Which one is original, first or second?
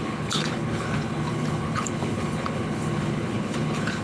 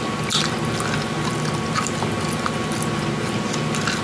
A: second